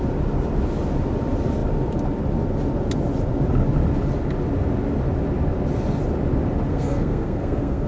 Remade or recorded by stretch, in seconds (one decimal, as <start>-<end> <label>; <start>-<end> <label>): 0.0-6.7 recorded; 6.7-7.9 remade